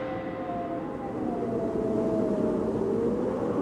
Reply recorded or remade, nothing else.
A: recorded